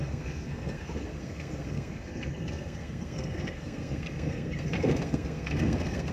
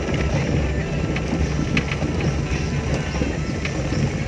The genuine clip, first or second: second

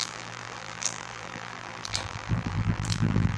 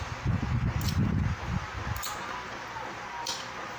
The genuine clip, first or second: second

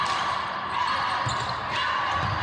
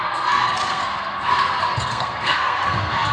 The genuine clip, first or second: first